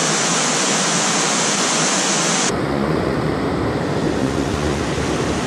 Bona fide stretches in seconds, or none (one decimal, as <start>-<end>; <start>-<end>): 3.3-4.2; 4.8-5.5